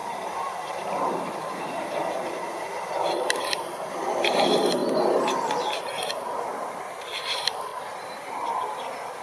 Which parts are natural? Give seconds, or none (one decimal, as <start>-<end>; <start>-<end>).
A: 4.8-6.8